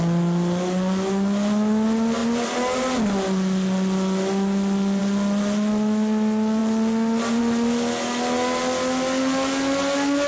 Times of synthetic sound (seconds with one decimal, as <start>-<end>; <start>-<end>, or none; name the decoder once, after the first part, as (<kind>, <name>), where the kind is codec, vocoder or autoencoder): none